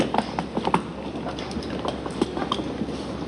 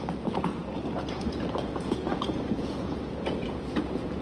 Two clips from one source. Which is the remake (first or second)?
second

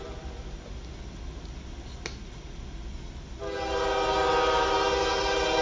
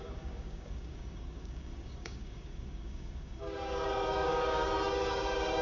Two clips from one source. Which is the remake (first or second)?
second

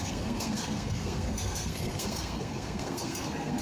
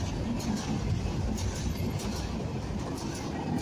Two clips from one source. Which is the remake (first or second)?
first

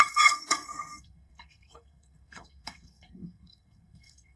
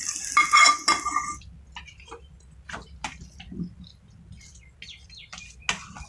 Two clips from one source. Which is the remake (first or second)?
first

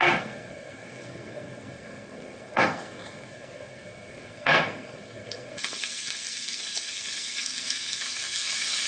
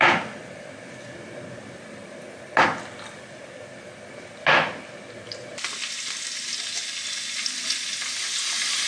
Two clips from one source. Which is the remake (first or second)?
first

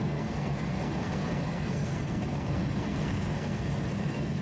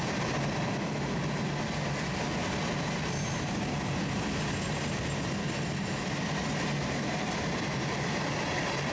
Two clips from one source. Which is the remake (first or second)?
first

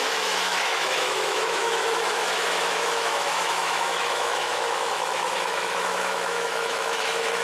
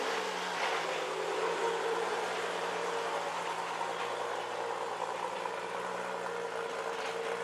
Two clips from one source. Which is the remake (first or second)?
first